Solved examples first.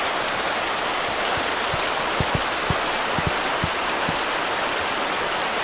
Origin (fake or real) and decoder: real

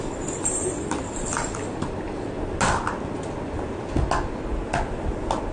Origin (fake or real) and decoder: real